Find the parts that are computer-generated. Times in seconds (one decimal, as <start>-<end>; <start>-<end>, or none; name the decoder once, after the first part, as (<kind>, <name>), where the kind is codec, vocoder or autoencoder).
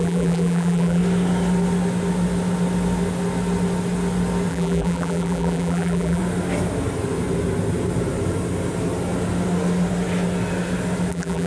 0.0-1.0 (vocoder, BigVGAN v2); 4.5-6.2; 11.1-11.5